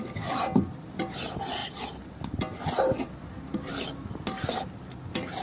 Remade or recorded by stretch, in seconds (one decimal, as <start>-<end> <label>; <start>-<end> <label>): 0.0-5.4 recorded